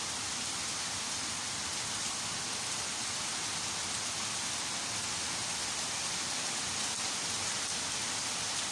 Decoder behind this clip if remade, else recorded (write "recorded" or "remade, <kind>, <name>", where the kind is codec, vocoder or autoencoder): recorded